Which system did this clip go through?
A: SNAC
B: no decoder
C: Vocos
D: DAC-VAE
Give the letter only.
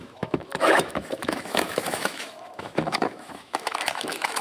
D